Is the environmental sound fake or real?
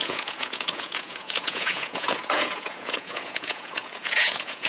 fake